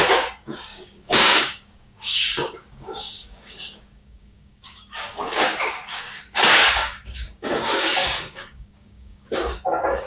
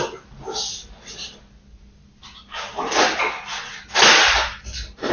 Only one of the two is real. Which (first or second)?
second